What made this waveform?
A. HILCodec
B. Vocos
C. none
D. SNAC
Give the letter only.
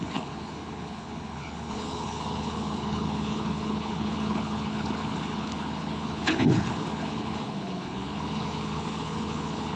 A